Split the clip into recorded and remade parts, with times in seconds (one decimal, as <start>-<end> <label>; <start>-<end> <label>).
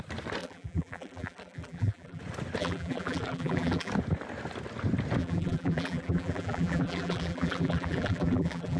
0.0-0.4 recorded; 0.4-2.2 remade; 2.2-2.6 recorded; 2.6-3.9 remade; 3.9-5.2 recorded; 5.2-8.8 remade